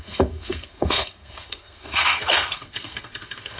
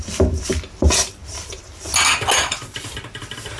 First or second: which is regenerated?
first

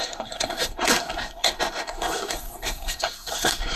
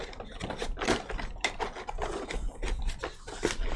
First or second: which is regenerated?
first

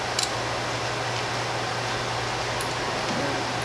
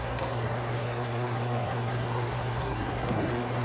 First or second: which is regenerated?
second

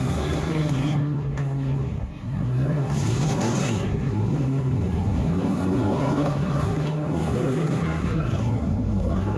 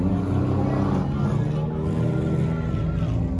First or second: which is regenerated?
first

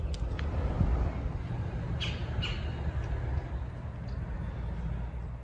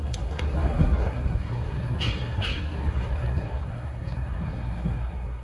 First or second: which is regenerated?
second